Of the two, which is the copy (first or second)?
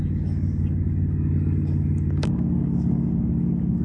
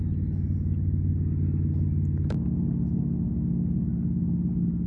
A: first